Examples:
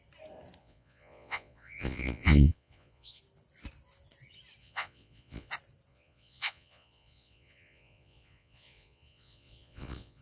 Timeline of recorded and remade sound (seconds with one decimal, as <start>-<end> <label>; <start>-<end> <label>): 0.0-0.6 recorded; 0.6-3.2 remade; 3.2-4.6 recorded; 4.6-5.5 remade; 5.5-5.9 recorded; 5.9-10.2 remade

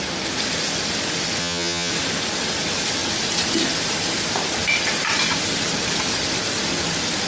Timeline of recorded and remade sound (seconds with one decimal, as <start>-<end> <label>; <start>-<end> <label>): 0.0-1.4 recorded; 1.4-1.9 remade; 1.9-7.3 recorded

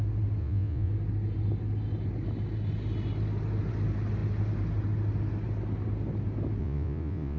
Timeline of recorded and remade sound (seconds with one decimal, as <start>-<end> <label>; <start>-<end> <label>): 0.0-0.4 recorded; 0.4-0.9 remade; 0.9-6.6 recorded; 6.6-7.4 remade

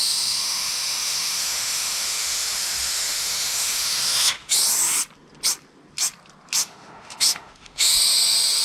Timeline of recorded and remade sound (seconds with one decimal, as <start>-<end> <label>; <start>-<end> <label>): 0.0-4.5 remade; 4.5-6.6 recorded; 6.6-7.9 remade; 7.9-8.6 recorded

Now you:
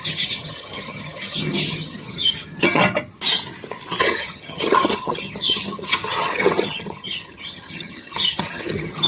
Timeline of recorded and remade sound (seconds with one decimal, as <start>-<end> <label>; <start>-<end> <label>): 0.0-2.8 remade; 2.8-4.0 recorded; 4.0-9.1 remade